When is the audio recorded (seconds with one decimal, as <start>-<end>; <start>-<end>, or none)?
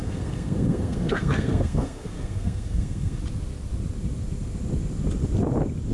3.2-5.9